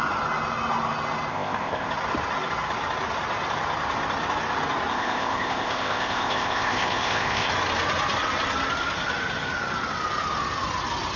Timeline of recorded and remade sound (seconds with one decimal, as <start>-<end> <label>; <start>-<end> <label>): 0.0-1.3 recorded; 1.3-1.9 remade; 1.9-4.9 recorded; 4.9-7.5 remade; 7.5-11.2 recorded